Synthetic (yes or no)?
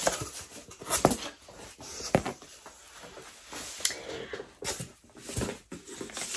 no